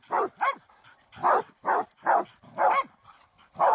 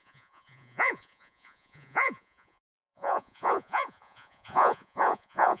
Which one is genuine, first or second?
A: first